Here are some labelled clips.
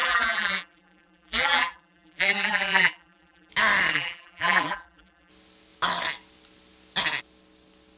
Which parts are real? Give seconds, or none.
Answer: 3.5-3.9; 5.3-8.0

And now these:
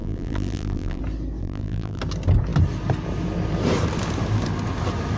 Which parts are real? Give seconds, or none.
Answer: 1.0-1.4; 2.0-5.2

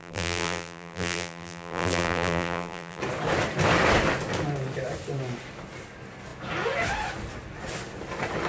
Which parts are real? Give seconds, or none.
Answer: 3.0-8.5

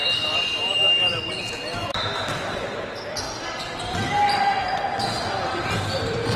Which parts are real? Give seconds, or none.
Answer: 0.0-1.3; 2.1-3.4

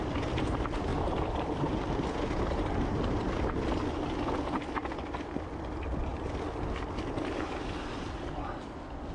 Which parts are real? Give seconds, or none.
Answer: 0.0-0.9; 3.6-9.1

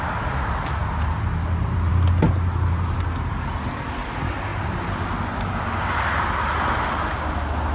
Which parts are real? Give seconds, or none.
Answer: 0.0-7.7